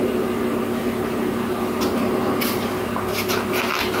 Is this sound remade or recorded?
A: recorded